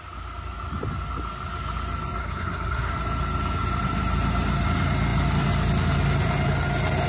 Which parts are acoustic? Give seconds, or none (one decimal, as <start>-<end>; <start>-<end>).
0.0-2.2; 2.9-7.1